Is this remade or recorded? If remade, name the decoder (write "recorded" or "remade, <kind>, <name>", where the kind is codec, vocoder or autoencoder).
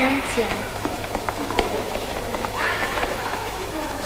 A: remade, autoencoder, DAC-VAE